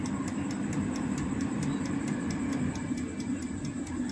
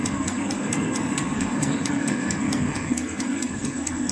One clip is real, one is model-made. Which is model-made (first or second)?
second